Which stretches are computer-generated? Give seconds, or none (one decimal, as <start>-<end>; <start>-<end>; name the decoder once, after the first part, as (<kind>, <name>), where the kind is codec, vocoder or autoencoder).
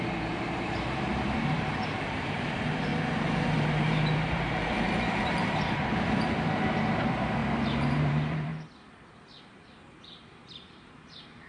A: 0.0-8.5 (vocoder, BigVGAN v2); 9.4-11.5